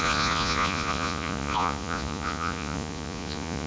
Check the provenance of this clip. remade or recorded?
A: remade